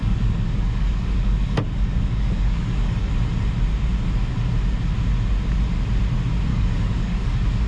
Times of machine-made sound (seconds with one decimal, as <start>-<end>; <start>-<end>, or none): 0.0-3.1; 6.5-7.7